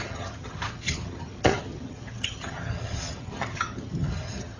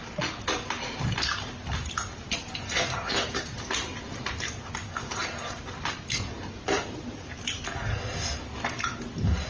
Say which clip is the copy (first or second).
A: first